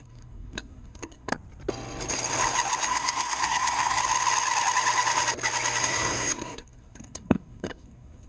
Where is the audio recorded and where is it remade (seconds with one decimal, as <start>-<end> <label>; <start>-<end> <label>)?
0.0-1.3 remade; 1.3-2.8 recorded; 2.8-4.0 remade; 4.0-5.8 recorded; 5.8-8.3 remade